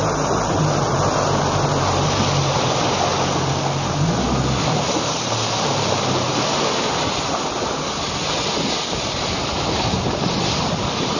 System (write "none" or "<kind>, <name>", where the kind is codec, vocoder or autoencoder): none